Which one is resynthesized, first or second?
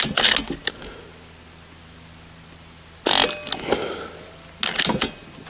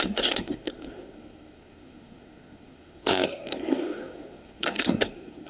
second